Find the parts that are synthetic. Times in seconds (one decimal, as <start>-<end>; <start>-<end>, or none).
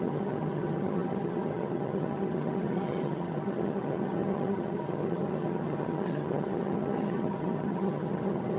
0.0-8.6